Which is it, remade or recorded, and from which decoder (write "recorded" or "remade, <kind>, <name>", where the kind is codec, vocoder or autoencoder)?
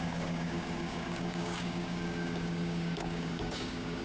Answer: remade, codec, DAC